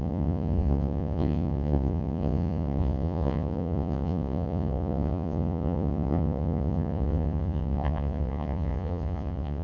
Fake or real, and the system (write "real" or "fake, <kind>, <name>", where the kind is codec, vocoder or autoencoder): fake, vocoder, Vocos